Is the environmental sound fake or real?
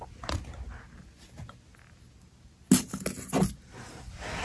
real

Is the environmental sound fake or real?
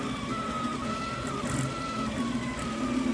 real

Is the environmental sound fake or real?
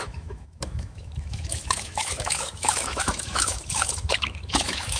fake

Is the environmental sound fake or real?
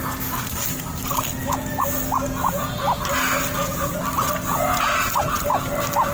real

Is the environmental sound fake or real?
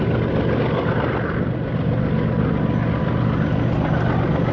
real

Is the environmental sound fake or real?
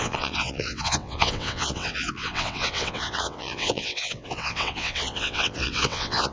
fake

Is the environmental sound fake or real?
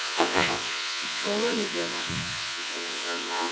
fake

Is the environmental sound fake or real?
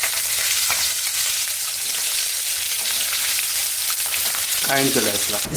fake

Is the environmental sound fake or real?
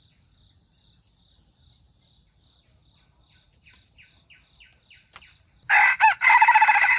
real